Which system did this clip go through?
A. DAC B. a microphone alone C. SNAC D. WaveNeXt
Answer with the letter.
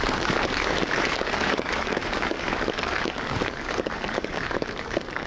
A